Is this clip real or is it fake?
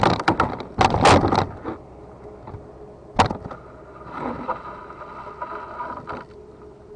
real